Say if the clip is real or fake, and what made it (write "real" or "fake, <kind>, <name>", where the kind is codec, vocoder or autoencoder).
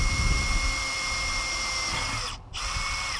real